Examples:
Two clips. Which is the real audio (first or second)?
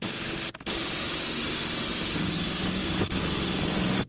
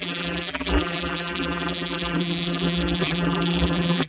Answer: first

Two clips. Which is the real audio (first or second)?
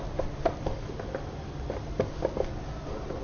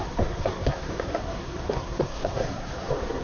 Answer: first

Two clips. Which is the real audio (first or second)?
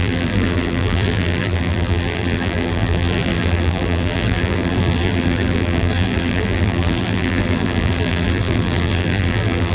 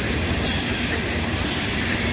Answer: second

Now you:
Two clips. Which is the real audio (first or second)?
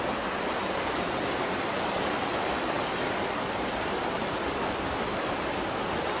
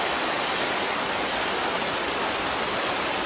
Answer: second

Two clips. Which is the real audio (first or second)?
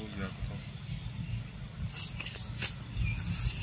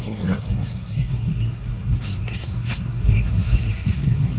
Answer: first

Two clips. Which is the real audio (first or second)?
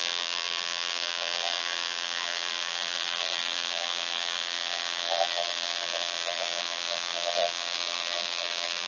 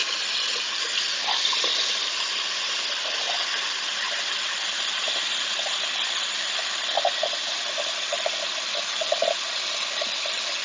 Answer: second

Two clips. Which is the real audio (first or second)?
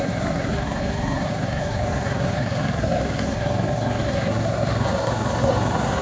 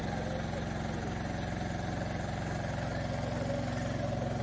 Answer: second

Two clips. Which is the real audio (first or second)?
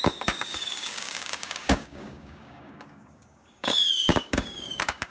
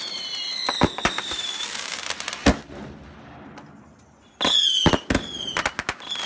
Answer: second